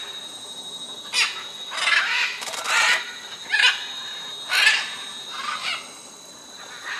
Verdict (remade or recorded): recorded